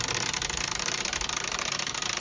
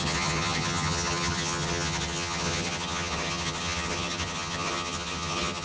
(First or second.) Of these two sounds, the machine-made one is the second